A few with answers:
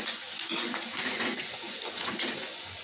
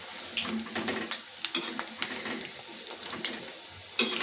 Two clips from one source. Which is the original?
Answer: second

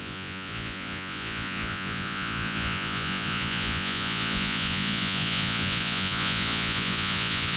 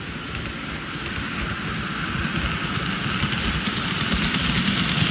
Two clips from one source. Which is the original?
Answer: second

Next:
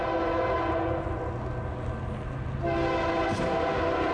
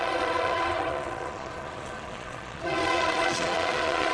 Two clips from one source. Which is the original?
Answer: first